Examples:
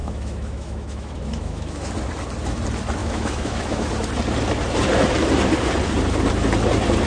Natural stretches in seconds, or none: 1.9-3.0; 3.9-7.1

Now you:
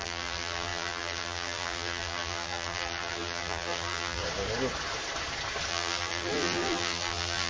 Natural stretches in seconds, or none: 4.2-5.7